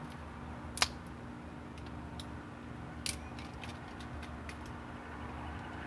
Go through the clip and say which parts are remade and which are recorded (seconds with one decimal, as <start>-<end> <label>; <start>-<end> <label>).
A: 0.0-5.9 recorded